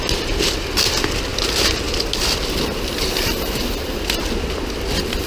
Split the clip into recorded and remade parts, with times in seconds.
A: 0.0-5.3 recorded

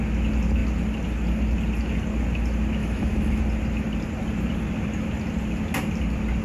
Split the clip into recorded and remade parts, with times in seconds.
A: 0.0-2.8 recorded; 2.8-3.4 remade; 3.4-6.4 recorded

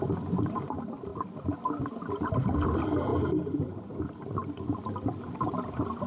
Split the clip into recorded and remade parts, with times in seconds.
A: 0.0-3.1 recorded; 3.1-4.0 remade; 4.0-6.1 recorded

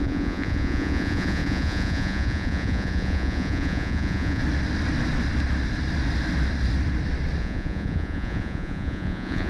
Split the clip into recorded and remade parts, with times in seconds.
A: 0.0-4.4 remade; 4.4-7.4 recorded; 7.4-9.5 remade